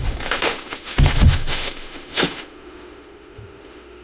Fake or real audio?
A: fake